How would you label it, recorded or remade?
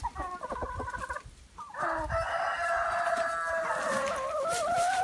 recorded